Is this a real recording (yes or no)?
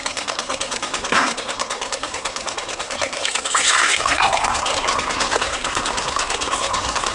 no